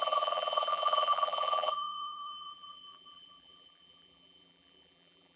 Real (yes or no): no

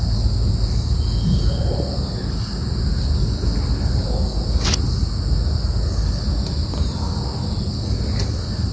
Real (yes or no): yes